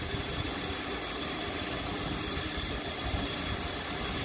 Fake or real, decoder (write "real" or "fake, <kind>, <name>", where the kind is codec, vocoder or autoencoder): real